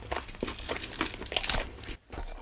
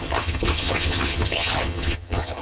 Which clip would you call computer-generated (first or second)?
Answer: second